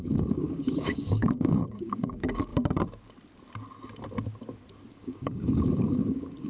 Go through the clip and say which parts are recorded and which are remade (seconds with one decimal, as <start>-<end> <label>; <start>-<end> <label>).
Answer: 0.0-2.5 remade; 2.5-4.9 recorded; 4.9-6.5 remade